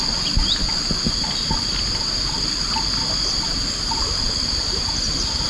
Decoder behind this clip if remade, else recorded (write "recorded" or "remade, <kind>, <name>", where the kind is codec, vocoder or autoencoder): recorded